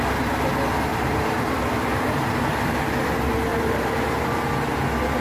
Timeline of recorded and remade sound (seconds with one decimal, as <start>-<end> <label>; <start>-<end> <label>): 0.0-0.9 recorded; 0.9-2.6 remade; 2.6-3.5 recorded; 3.5-4.4 remade; 4.4-5.2 recorded

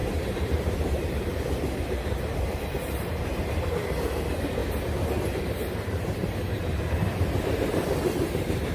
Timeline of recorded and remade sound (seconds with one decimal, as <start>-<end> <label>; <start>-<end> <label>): 0.0-4.6 remade; 4.6-5.4 recorded; 5.4-8.7 remade

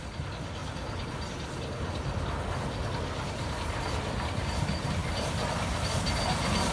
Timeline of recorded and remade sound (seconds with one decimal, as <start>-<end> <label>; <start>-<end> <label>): 0.0-5.0 recorded; 5.0-5.5 remade; 5.5-6.7 recorded

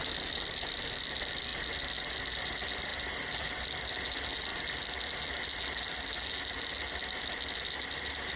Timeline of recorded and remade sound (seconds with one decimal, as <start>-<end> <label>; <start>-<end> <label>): 0.0-8.4 recorded

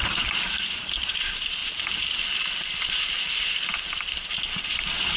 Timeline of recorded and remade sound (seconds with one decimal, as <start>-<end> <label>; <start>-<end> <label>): 0.0-1.6 remade; 1.6-4.7 recorded; 4.7-5.2 remade